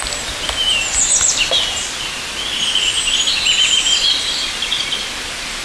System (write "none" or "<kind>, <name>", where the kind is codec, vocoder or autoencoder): none